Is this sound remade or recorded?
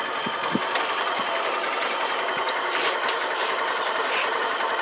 recorded